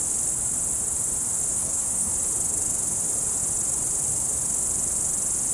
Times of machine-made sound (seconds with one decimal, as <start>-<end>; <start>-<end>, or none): 1.5-2.1